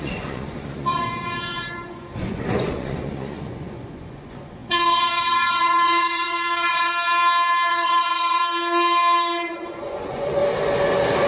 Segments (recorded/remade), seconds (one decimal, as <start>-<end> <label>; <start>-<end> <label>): 0.0-6.9 remade; 6.9-7.7 recorded; 7.7-8.4 remade; 8.4-9.5 recorded; 9.5-10.4 remade; 10.4-11.3 recorded